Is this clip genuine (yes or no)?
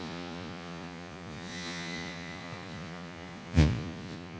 no